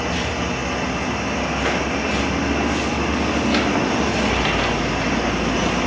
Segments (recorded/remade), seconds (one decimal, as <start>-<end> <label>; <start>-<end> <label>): 0.0-5.9 recorded